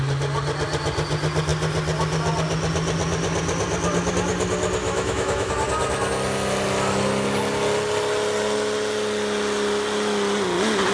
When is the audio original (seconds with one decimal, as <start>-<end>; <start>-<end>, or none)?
0.0-4.8; 5.5-10.9